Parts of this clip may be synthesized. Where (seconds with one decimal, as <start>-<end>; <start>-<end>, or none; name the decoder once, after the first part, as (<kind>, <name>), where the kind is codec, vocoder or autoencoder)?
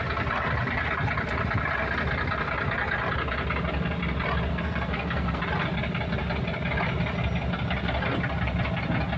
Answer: 4.5-5.4 (codec, SNAC)